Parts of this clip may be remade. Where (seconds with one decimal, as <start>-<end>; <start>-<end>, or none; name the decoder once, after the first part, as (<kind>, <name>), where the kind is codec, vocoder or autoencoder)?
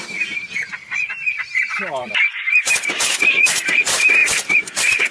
2.0-3.0 (vocoder, BigVGAN v2); 4.2-5.1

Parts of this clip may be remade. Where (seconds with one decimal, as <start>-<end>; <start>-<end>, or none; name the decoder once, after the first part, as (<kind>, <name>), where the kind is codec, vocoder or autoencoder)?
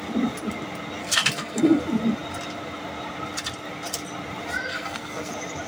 1.0-1.8 (codec, SNAC); 4.7-5.3